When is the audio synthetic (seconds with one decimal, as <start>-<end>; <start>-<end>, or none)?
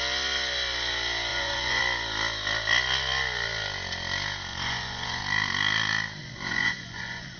1.3-1.8; 4.5-5.2; 6.2-7.4